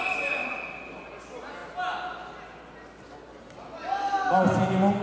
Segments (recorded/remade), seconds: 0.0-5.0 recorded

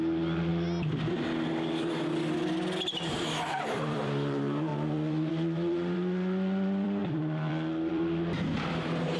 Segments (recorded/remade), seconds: 0.0-0.5 remade; 0.5-2.8 recorded; 2.8-4.7 remade; 4.7-5.3 recorded; 5.3-9.2 remade

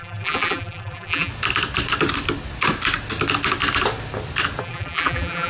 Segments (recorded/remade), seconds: 0.0-1.3 remade; 1.3-4.6 recorded; 4.6-5.5 remade

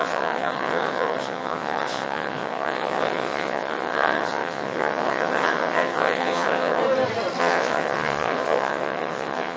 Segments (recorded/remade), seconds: 0.0-6.8 remade; 6.8-7.4 recorded; 7.4-9.6 remade

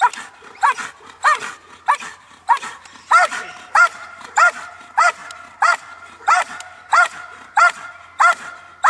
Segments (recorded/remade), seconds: 0.0-2.1 recorded; 2.1-4.5 remade; 4.5-8.9 recorded

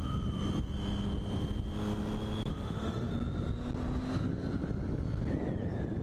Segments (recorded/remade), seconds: 0.0-2.5 recorded; 2.5-3.1 remade; 3.1-6.0 recorded

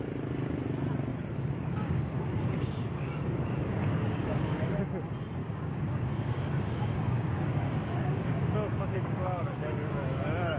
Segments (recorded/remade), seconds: 0.0-1.1 recorded; 1.1-4.6 remade; 4.6-5.4 recorded; 5.4-9.9 remade; 9.9-10.6 recorded